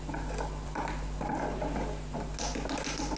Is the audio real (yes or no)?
yes